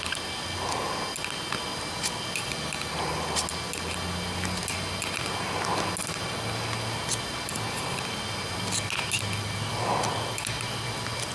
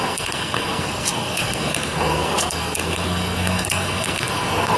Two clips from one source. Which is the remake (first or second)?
second